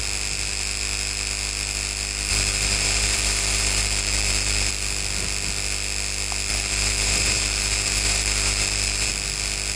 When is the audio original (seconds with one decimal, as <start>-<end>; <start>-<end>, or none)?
0.0-2.3; 4.7-6.5; 9.1-9.8